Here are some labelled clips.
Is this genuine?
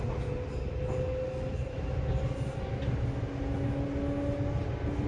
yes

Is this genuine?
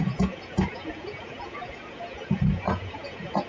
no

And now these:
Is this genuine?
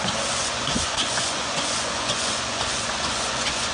no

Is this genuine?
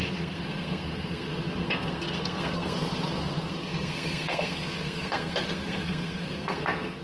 no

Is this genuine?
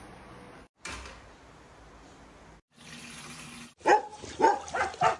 yes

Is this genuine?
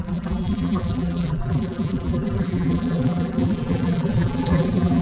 no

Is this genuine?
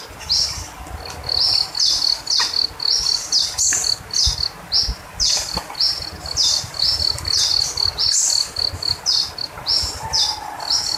yes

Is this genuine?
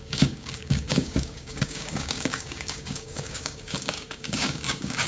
no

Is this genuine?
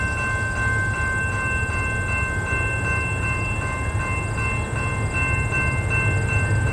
yes